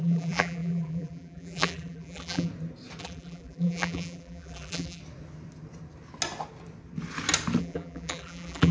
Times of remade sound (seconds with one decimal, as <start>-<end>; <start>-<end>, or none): 0.0-2.5; 3.0-5.0; 7.6-8.7